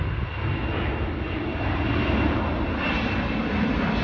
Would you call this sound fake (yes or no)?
no